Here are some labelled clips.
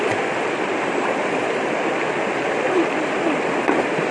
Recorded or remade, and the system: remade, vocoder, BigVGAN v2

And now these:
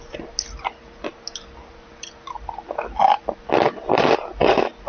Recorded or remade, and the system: recorded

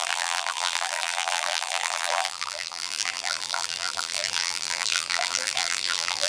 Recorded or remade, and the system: remade, vocoder, BigVGAN v2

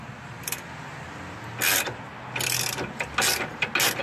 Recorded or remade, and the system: recorded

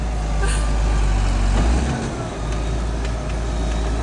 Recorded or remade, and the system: recorded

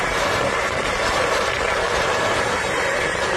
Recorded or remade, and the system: remade, vocoder, BigVGAN v2